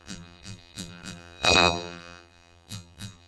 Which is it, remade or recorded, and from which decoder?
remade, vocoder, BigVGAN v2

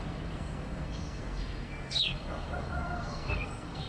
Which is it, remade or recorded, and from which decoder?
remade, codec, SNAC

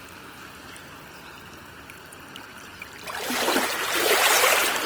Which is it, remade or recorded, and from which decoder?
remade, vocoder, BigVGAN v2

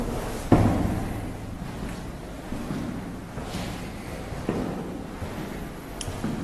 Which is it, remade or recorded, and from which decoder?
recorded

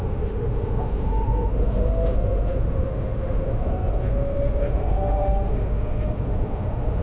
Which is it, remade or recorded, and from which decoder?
remade, autoencoder, DAC-VAE